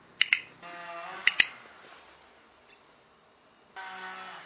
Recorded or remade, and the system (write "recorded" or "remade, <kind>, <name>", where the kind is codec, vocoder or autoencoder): recorded